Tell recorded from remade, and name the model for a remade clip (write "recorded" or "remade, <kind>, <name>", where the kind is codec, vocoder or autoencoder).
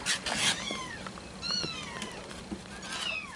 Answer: recorded